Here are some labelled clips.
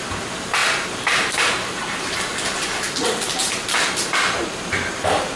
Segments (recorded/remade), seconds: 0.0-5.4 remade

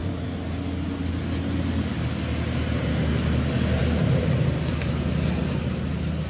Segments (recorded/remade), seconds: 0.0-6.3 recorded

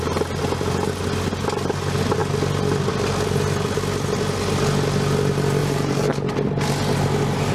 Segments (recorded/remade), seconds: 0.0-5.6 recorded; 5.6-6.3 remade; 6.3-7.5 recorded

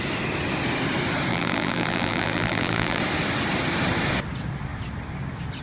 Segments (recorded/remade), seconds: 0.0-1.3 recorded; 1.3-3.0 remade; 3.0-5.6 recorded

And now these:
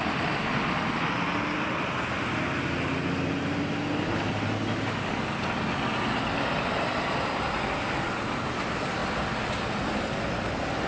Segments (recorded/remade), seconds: 0.0-10.9 recorded